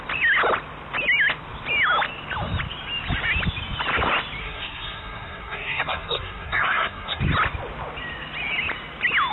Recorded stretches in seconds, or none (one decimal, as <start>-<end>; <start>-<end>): 0.0-4.4; 7.2-9.3